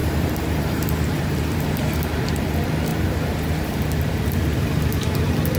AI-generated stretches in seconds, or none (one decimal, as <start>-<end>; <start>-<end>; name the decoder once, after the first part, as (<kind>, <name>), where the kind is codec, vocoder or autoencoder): 0.0-2.4 (vocoder, BigVGAN v2); 2.9-4.9